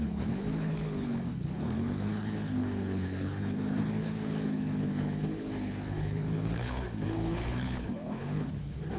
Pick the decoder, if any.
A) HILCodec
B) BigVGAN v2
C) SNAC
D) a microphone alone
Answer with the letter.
A